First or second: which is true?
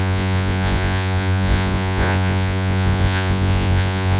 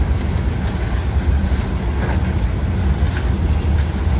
second